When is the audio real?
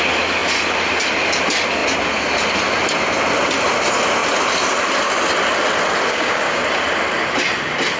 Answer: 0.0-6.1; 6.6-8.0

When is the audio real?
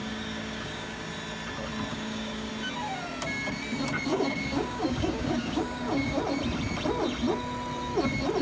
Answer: 1.1-1.9; 2.5-4.1; 6.2-8.4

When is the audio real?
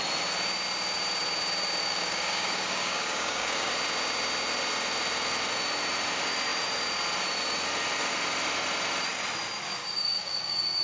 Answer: 0.0-1.8; 3.7-9.8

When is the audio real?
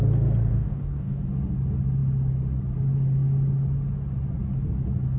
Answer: 0.0-0.5; 1.2-5.2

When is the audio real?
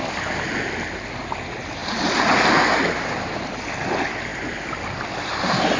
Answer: 0.0-5.8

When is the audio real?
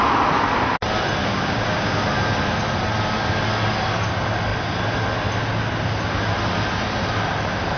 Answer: 0.0-1.2; 2.0-7.8